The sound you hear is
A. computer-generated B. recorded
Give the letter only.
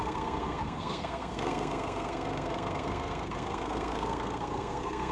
A